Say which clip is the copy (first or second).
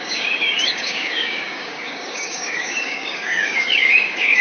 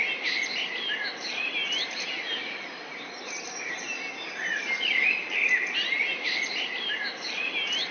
first